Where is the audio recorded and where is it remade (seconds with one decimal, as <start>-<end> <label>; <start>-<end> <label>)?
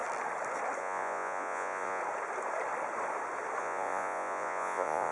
0.0-0.8 recorded; 0.8-2.0 remade; 2.0-3.6 recorded; 3.6-5.1 remade